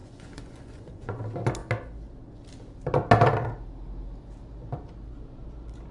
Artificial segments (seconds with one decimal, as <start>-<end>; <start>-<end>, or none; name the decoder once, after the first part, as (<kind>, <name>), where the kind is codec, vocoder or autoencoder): 0.0-1.2 (vocoder, Vocos)